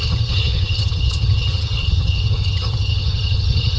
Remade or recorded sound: remade